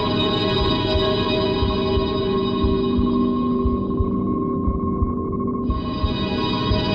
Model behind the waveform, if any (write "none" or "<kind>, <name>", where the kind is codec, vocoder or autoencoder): none